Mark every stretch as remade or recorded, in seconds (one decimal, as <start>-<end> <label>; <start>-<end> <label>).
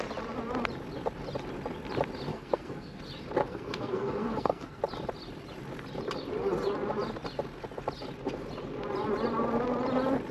0.0-2.3 recorded; 2.3-3.0 remade; 3.0-3.4 recorded; 3.4-4.8 remade; 4.8-10.3 recorded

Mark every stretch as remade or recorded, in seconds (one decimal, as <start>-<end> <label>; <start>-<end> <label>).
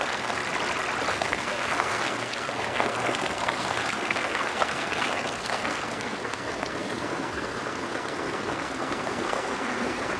0.0-0.4 remade; 0.4-1.1 recorded; 1.1-10.2 remade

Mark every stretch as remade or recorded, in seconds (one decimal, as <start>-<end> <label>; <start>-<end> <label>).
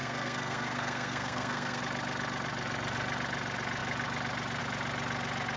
0.0-1.8 remade; 1.8-5.6 recorded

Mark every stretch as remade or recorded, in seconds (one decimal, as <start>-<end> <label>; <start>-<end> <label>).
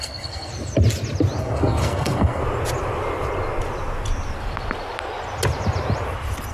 0.0-0.5 remade; 0.5-1.4 recorded; 1.4-2.4 remade; 2.4-6.5 recorded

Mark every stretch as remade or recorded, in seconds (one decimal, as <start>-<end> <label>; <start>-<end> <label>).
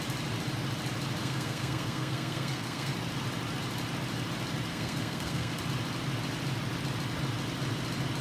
0.0-1.2 recorded; 1.2-2.9 remade; 2.9-4.7 recorded; 4.7-5.6 remade; 5.6-8.2 recorded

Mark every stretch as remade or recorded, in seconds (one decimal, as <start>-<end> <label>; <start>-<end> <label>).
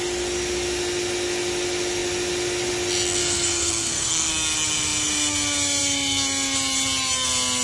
0.0-3.2 recorded; 3.2-4.3 remade; 4.3-7.6 recorded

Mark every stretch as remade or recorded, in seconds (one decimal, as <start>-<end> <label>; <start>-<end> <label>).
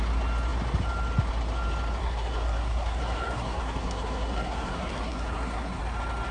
0.0-2.0 recorded; 2.0-5.8 remade; 5.8-6.3 recorded